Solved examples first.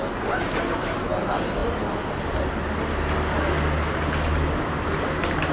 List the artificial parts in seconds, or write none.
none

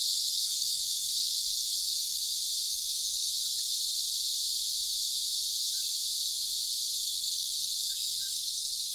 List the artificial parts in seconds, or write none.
0.0-2.2 (codec, SNAC); 2.7-3.3; 7.0-8.9

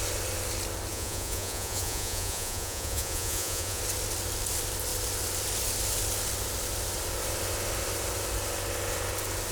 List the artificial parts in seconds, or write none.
0.9-3.8 (vocoder, Vocos)